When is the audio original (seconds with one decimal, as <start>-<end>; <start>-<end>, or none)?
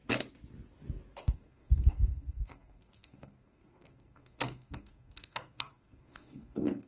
0.0-1.2